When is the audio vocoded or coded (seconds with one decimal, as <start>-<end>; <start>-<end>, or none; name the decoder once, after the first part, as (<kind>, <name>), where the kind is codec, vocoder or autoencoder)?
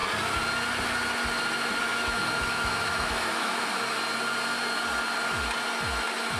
1.9-3.7 (autoencoder, DAC-VAE)